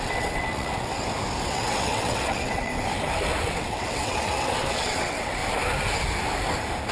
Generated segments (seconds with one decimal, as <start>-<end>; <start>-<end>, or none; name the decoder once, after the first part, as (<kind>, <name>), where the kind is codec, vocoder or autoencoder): 0.0-0.9 (vocoder, WaveNeXt); 1.4-2.7; 3.4-5.4